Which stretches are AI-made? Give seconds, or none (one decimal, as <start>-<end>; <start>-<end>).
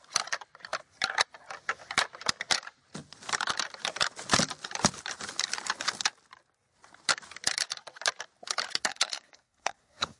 8.8-10.2